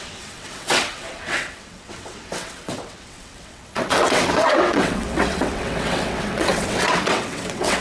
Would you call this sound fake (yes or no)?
yes